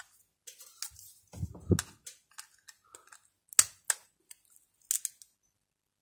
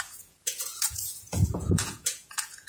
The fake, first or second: second